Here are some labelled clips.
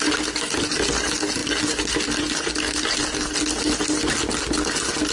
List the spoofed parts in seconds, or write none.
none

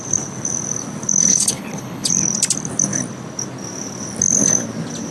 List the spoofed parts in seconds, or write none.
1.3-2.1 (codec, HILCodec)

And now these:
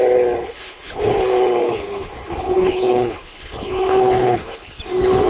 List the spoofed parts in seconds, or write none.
0.4-1.1 (codec, HILCodec); 1.6-4.8